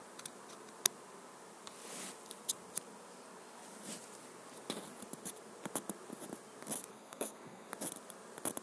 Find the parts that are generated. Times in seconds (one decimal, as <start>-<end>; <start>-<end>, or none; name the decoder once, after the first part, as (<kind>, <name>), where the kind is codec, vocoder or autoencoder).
6.9-7.7 (codec, SNAC)